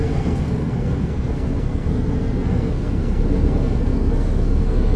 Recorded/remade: remade